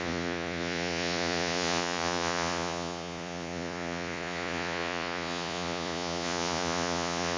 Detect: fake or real fake